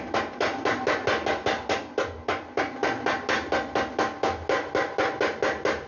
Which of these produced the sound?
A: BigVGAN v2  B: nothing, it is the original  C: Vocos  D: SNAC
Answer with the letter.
B